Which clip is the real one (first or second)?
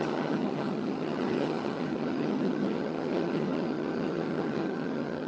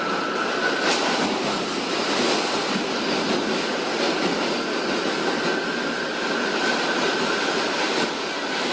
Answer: second